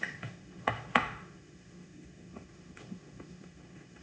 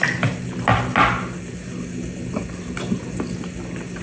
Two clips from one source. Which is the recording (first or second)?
second